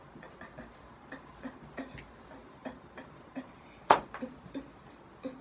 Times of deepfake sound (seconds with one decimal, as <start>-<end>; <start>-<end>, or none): 2.4-4.0